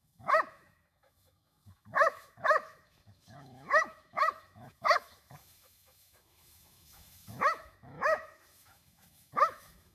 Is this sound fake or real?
fake